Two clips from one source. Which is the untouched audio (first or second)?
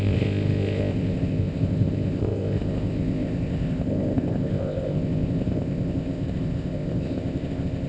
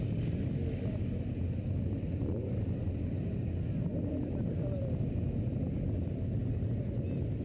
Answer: second